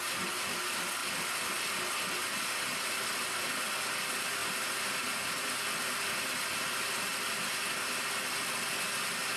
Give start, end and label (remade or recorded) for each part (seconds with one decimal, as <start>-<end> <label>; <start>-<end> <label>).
0.0-9.4 recorded